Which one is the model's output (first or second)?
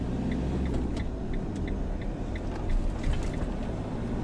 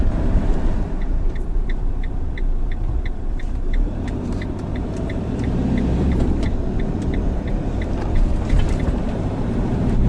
second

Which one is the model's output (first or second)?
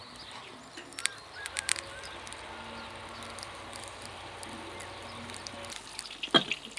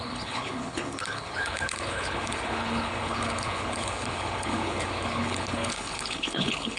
second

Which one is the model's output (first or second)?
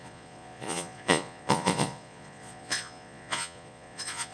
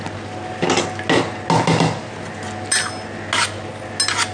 first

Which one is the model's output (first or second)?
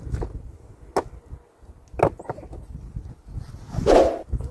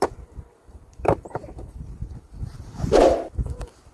second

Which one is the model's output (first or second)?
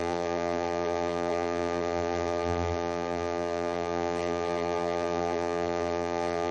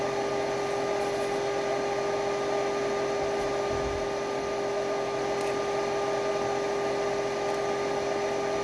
first